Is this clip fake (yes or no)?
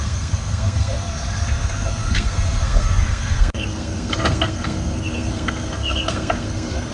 yes